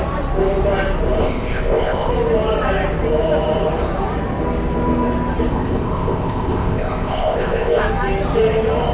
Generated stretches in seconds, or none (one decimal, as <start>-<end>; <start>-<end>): 1.2-2.1; 5.5-7.8